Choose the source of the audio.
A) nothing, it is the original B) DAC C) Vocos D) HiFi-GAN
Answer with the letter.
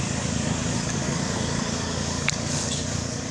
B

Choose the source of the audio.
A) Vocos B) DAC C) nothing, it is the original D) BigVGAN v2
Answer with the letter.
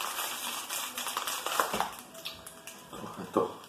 C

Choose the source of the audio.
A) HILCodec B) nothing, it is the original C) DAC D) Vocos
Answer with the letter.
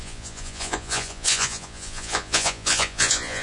D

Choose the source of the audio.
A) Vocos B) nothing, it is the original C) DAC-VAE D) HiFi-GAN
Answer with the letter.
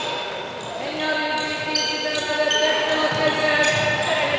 B